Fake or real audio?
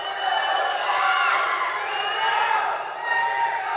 real